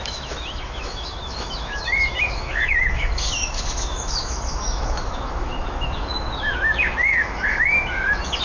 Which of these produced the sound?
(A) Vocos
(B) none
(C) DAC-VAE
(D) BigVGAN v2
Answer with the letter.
C